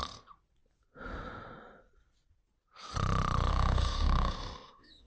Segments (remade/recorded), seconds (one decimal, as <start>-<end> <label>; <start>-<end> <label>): 0.0-3.5 recorded; 3.5-5.1 remade